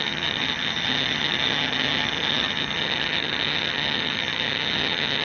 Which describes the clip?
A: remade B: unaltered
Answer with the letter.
A